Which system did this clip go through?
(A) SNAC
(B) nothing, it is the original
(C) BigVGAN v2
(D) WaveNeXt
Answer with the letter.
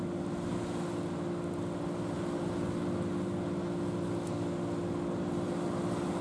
B